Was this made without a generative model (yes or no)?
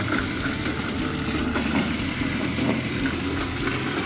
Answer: no